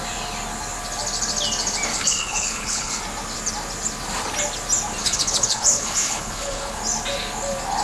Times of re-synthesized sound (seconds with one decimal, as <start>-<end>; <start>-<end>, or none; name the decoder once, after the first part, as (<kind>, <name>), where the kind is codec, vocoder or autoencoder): 1.9-3.0 (codec, HILCodec); 5.0-6.8